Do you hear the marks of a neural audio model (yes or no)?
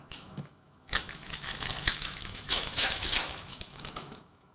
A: yes